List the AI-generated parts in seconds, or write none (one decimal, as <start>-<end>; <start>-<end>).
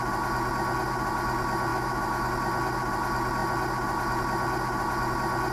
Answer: 1.7-2.3